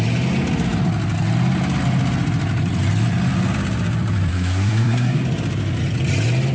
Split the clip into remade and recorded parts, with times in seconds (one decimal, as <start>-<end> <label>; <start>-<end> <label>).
0.0-4.3 recorded; 4.3-5.2 remade; 5.2-6.5 recorded